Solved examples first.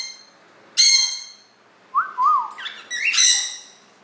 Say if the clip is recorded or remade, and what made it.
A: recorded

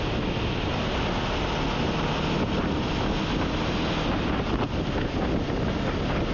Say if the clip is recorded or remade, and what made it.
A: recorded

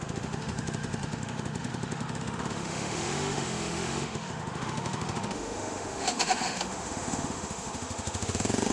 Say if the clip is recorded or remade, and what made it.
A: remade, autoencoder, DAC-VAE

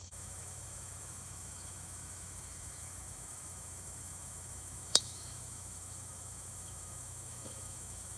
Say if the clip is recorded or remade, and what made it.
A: remade, autoencoder, DAC-VAE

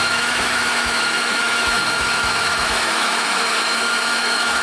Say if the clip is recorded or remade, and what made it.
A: remade, autoencoder, DAC-VAE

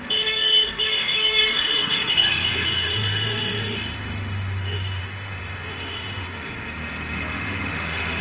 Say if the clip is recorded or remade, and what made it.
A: remade, autoencoder, DAC-VAE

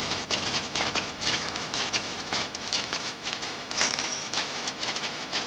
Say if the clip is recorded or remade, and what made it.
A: remade, autoencoder, DAC-VAE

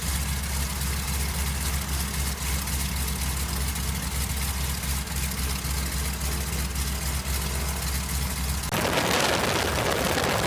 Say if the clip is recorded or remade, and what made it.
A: recorded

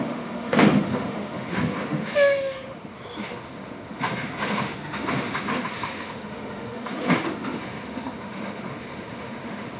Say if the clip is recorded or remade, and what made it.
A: remade, autoencoder, DAC-VAE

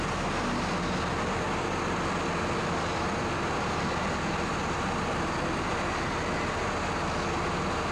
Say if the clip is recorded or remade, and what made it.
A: recorded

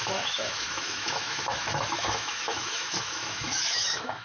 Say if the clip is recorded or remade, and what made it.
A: remade, autoencoder, DAC-VAE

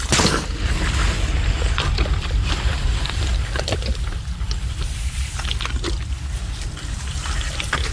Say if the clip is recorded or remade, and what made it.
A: recorded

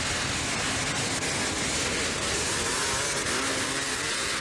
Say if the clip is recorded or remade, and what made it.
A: recorded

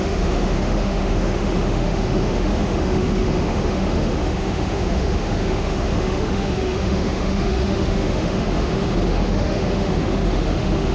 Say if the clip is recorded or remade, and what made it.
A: remade, autoencoder, DAC-VAE